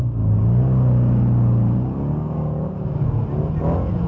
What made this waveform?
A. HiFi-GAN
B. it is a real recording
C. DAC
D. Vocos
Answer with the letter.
B